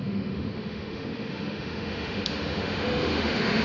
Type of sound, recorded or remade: remade